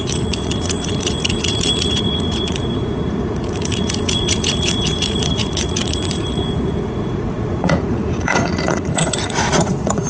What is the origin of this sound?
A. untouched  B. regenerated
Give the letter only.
B